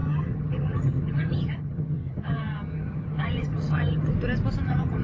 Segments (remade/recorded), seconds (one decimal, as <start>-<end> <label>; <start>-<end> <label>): 0.0-4.1 remade; 4.1-4.6 recorded; 4.6-5.0 remade